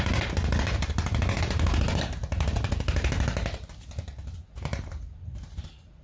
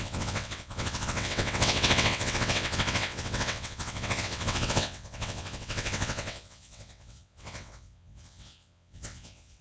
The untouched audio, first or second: first